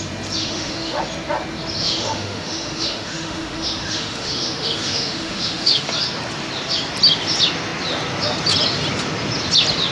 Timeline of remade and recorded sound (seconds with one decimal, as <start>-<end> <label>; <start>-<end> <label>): 0.0-0.4 recorded; 0.4-1.0 remade; 1.0-1.8 recorded; 1.8-5.9 remade; 5.9-9.9 recorded